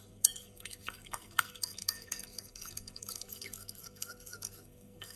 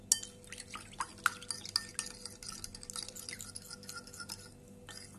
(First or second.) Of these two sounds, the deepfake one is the first